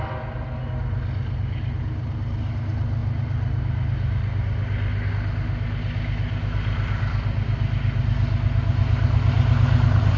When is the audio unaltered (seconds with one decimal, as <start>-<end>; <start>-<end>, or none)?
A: 0.0-10.2